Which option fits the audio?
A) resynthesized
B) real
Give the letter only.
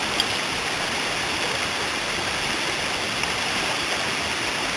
B